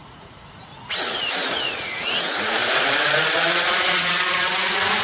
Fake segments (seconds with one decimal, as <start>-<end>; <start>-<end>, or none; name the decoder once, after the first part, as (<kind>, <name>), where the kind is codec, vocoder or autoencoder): 0.0-5.0 (vocoder, Vocos)